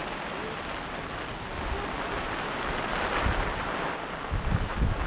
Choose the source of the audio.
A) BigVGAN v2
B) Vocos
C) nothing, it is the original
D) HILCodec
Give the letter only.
C